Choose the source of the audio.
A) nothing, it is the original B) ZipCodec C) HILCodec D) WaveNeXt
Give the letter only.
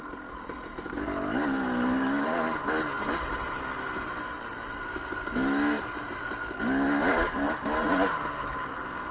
A